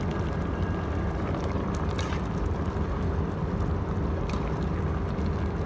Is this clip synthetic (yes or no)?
no